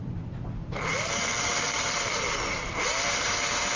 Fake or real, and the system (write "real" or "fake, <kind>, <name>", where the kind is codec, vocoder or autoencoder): fake, vocoder, BigVGAN v2